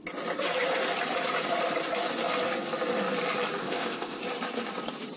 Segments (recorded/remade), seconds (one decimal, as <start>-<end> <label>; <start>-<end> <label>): 0.0-3.6 recorded; 3.6-4.2 remade; 4.2-5.2 recorded